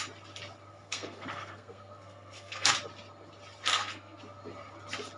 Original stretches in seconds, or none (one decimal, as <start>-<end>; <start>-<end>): 0.0-0.7; 2.7-3.7; 4.2-5.2